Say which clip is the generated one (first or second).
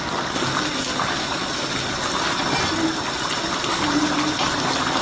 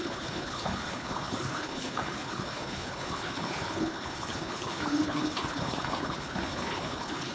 second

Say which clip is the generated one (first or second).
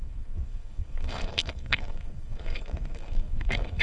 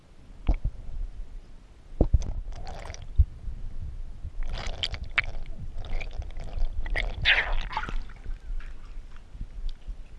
first